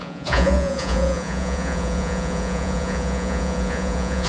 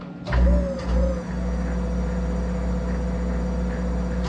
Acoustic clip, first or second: second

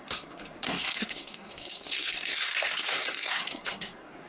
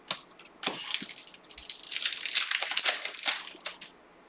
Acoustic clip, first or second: second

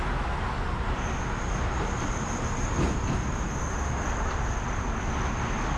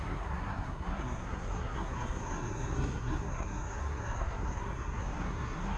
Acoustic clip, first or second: first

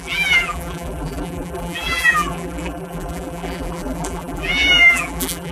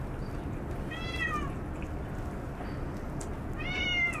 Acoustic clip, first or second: second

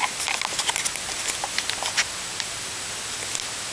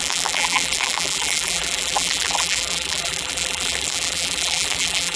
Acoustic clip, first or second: first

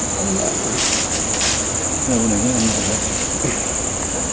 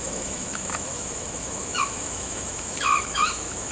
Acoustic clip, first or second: first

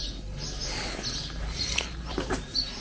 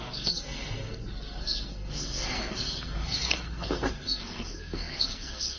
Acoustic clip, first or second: first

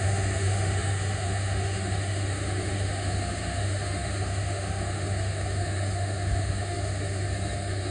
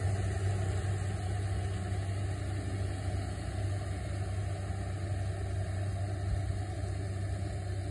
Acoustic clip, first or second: second